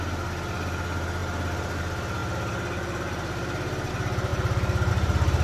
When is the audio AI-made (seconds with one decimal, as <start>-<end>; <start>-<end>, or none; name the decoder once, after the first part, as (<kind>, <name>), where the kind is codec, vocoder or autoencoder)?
none